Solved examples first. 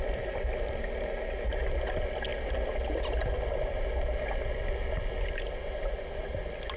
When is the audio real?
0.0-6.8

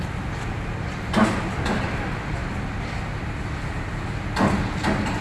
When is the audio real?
0.0-5.2

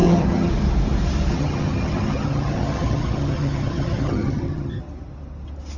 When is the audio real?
0.5-1.3; 4.8-5.8

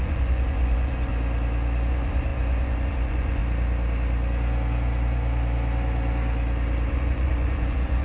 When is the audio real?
1.1-1.9; 3.4-6.9

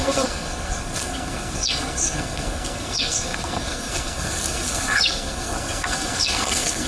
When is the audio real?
none

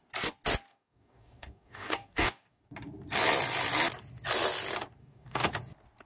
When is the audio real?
0.0-0.7; 2.6-5.0; 5.5-6.1

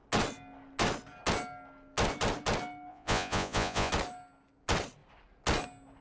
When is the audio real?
0.0-2.9; 3.9-6.0

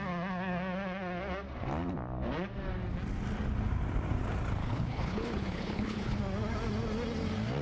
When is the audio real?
0.0-4.6; 6.2-7.6